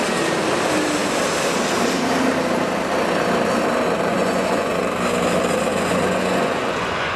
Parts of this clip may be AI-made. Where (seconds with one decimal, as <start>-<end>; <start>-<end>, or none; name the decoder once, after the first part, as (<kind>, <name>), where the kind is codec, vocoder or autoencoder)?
4.1-4.8 (vocoder, Vocos); 5.7-7.2